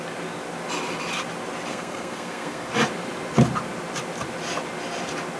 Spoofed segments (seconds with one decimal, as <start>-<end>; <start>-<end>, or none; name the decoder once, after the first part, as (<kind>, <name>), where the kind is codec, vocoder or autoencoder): 1.7-2.7 (codec, SNAC)